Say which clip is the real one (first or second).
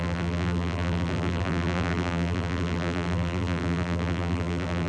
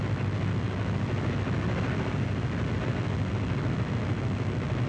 second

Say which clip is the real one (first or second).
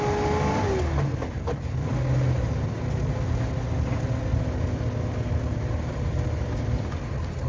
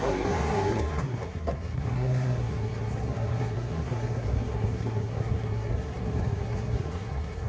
first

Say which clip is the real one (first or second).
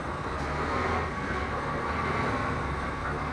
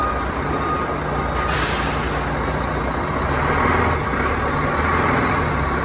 second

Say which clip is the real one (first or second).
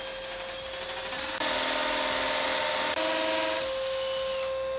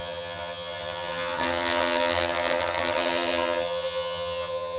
first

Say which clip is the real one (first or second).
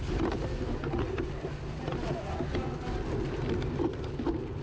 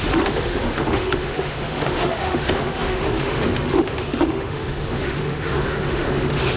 first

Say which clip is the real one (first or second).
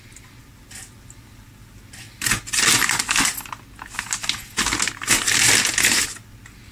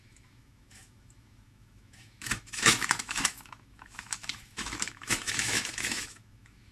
first